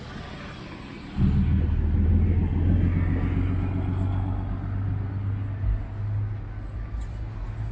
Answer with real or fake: real